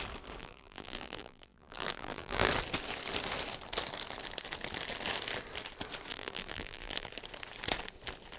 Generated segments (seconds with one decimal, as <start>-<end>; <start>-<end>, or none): 0.4-2.5; 6.1-7.1